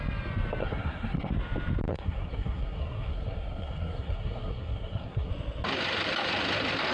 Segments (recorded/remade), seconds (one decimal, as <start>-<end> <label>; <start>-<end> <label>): 0.0-0.6 recorded; 0.6-1.3 remade; 1.3-1.9 recorded; 1.9-5.3 remade; 5.3-6.9 recorded